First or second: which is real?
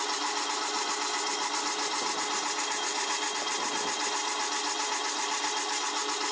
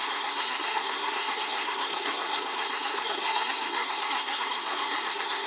first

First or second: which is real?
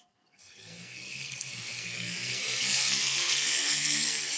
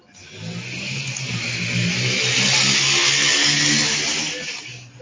second